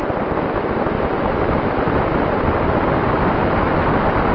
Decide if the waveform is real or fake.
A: fake